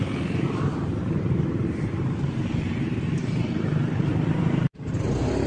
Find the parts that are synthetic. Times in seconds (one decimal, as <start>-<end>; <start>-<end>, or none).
0.0-5.5

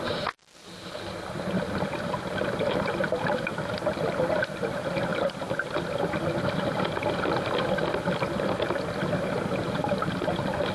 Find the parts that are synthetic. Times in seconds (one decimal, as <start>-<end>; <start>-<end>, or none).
none

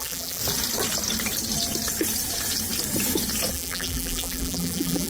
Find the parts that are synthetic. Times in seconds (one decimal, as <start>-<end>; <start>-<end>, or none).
0.0-0.4; 3.5-5.1

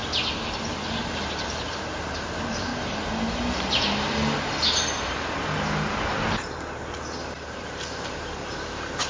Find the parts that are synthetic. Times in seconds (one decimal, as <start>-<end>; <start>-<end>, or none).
1.0-2.7; 7.5-9.1

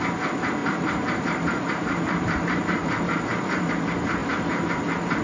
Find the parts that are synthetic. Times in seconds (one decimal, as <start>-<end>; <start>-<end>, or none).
0.6-3.7; 4.2-4.7

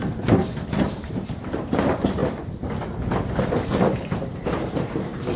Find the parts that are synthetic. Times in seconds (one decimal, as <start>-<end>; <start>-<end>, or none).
0.0-2.2; 3.2-5.4

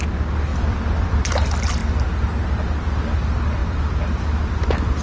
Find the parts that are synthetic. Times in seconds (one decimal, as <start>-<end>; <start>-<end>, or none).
0.5-1.3; 3.6-4.2